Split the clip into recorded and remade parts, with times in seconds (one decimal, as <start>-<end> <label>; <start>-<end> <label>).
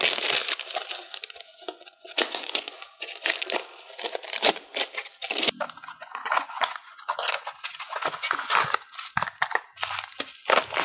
0.0-1.0 recorded; 1.0-3.1 remade; 3.1-5.8 recorded; 5.8-8.5 remade; 8.5-10.8 recorded